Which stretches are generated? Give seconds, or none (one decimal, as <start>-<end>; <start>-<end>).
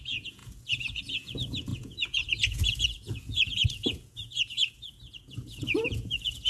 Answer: 0.0-6.5